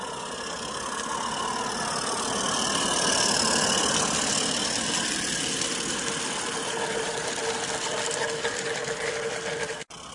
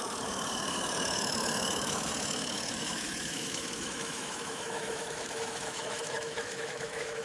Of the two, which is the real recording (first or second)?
first